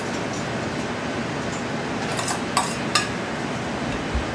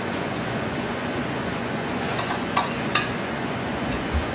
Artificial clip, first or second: second